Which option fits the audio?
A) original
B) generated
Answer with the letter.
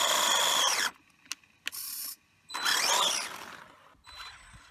A